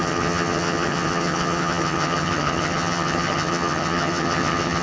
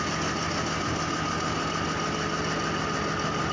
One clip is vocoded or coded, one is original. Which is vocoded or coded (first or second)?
first